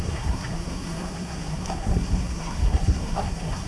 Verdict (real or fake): fake